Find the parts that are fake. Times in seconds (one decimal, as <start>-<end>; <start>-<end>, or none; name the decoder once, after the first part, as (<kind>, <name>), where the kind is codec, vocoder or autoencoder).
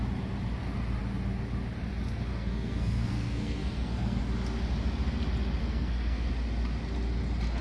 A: 2.3-4.2 (codec, SNAC); 5.6-6.3